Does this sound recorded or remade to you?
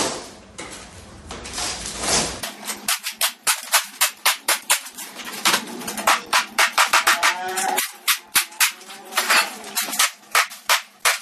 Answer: remade